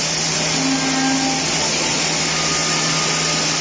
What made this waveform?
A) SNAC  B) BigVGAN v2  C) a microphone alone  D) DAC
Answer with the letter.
C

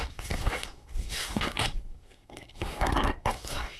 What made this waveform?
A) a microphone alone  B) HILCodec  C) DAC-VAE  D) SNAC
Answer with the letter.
D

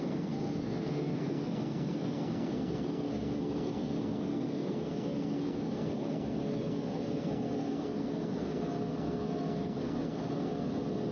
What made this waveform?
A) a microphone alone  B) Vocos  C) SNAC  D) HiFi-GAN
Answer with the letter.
C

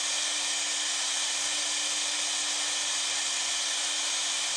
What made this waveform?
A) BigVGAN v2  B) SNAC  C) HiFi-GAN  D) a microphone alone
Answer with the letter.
D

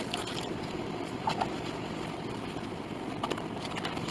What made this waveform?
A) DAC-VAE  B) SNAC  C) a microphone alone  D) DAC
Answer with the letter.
C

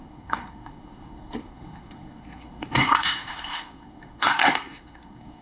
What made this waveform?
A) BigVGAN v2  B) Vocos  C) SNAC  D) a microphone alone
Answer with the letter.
C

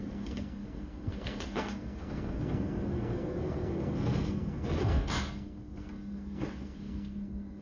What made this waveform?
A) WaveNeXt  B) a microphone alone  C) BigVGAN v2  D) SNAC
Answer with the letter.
D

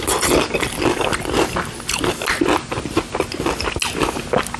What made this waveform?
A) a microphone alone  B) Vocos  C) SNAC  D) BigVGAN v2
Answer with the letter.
A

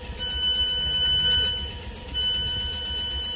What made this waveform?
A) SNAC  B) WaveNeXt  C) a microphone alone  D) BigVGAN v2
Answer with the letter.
C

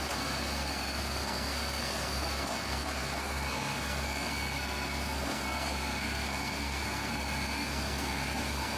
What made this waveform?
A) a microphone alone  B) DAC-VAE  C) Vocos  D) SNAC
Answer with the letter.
D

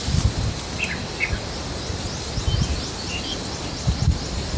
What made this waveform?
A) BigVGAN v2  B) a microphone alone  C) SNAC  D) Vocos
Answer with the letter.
B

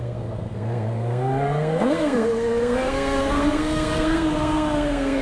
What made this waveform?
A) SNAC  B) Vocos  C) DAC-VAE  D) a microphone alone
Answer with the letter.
A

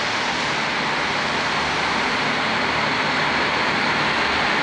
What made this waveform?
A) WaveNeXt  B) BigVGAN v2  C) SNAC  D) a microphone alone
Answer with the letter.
D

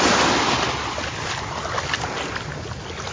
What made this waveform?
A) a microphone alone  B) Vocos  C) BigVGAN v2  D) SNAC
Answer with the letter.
A